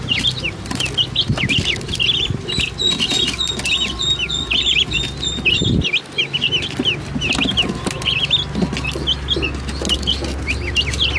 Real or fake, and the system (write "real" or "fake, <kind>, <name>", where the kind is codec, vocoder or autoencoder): real